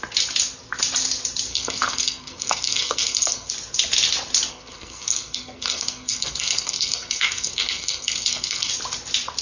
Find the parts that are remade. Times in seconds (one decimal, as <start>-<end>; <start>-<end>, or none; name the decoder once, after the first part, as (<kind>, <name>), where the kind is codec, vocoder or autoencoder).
1.5-3.5 (codec, SNAC); 4.5-8.7